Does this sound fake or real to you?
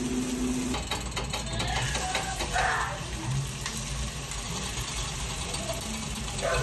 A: real